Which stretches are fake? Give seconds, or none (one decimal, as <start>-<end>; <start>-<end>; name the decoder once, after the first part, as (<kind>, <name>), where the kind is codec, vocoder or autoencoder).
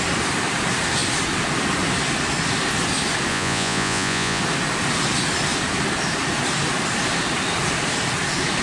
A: 3.3-4.4 (vocoder, Vocos)